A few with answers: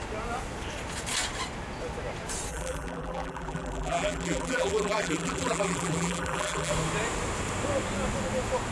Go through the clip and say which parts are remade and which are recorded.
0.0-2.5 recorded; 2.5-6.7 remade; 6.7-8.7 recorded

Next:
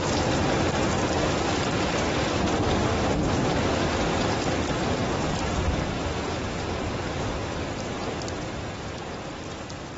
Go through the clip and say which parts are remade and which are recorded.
0.0-6.1 recorded; 6.1-6.8 remade; 6.8-10.0 recorded

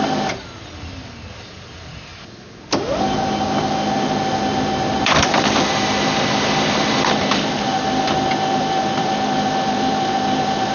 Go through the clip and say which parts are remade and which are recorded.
0.0-2.1 remade; 2.1-5.0 recorded; 5.0-10.7 remade

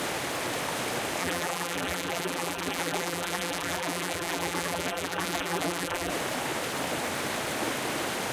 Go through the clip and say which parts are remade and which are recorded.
0.0-1.2 recorded; 1.2-6.1 remade; 6.1-8.3 recorded